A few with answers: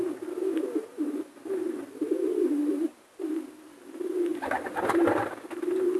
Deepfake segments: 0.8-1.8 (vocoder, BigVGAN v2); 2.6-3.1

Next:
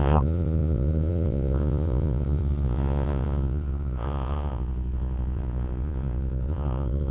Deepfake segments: 0.0-7.1 (vocoder, Vocos)

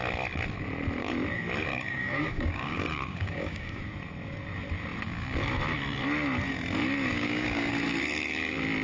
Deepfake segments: 1.7-3.8 (codec, DAC); 7.1-7.7

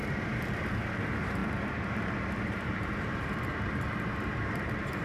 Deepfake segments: 0.9-5.0 (vocoder, BigVGAN v2)